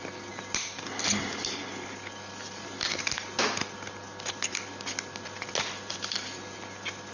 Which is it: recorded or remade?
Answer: recorded